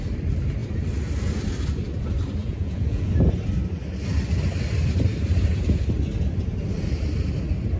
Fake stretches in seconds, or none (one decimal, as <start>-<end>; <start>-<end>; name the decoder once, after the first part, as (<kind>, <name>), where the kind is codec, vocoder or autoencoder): 2.4-3.1 (vocoder, Vocos)